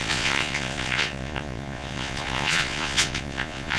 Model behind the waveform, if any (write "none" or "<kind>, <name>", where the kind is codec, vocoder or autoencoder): vocoder, Vocos